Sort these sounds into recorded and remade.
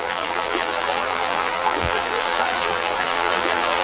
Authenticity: remade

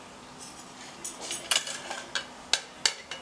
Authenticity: recorded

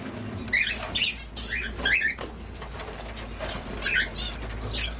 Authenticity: recorded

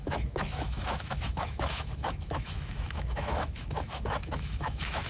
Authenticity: remade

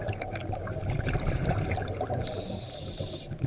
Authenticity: remade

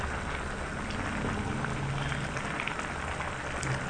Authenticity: recorded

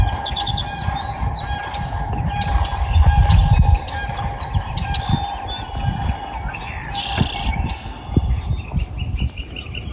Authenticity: recorded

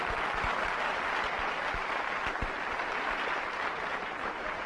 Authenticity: recorded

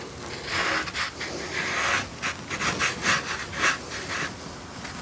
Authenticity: recorded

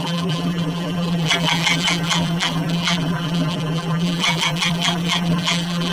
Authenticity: remade